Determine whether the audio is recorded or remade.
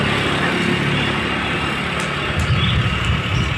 recorded